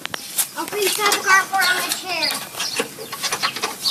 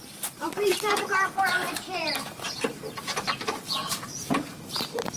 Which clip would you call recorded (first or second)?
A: first